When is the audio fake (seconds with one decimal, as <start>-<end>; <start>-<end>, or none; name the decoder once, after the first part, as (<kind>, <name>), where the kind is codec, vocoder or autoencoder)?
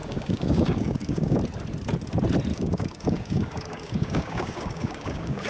0.0-1.4 (codec, DAC); 2.5-5.5